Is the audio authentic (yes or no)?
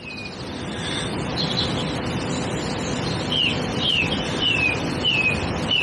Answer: yes